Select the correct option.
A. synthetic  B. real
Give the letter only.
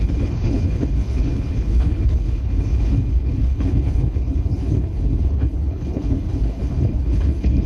A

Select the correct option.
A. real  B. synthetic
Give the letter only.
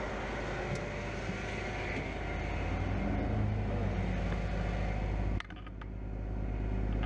A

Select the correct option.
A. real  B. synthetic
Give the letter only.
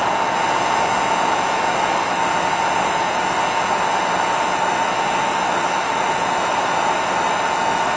A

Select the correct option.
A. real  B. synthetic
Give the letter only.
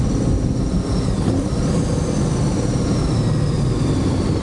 A